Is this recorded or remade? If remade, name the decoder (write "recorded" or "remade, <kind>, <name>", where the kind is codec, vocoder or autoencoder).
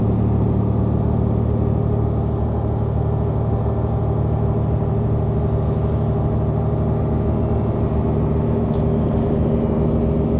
recorded